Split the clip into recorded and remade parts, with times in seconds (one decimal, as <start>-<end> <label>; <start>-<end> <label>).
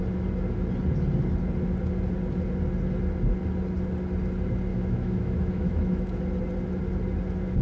0.0-4.7 recorded; 4.7-6.2 remade; 6.2-7.6 recorded